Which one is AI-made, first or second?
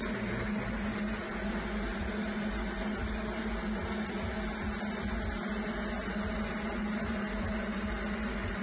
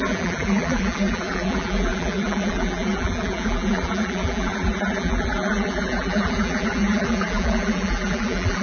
second